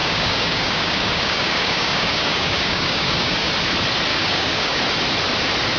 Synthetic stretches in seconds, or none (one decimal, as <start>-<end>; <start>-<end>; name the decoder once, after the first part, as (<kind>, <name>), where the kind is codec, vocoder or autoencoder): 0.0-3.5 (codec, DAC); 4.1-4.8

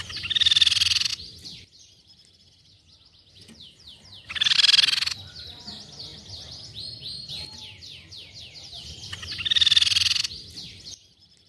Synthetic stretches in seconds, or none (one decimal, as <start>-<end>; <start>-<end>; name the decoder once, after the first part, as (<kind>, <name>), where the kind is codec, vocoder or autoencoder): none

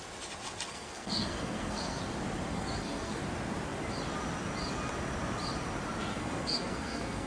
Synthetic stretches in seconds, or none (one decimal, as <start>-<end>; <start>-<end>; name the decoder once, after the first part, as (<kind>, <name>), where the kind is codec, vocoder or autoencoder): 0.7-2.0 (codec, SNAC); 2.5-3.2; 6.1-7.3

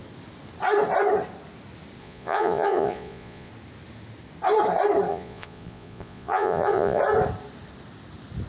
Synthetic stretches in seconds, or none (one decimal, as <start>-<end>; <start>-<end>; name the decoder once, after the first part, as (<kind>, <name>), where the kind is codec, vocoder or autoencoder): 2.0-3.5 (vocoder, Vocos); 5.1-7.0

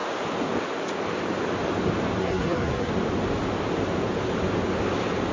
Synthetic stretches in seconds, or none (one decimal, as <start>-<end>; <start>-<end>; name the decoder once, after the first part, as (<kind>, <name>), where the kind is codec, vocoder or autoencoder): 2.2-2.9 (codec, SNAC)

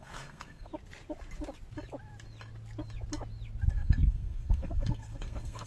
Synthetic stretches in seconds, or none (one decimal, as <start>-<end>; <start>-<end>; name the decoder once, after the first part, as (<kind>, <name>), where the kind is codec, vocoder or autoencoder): 0.0-0.7 (codec, SNAC); 3.7-5.7

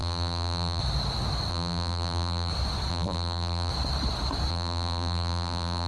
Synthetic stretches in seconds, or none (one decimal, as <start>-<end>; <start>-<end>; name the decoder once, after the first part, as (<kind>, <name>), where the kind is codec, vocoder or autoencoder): 0.0-0.8 (vocoder, BigVGAN v2); 1.5-2.5; 2.9-3.7; 4.5-5.9